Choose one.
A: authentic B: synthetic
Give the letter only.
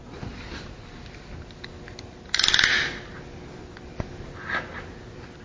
A